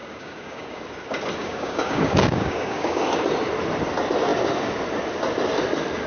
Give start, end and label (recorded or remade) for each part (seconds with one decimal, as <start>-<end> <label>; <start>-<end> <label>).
0.0-0.8 remade; 0.8-1.4 recorded; 1.4-3.0 remade; 3.0-6.1 recorded